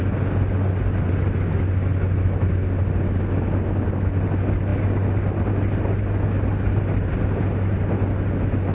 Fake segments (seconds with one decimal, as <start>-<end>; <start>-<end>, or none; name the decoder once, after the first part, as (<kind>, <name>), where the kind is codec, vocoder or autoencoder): none